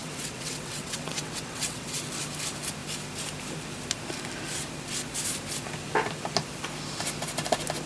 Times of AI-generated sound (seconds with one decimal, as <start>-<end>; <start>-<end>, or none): 0.0-2.0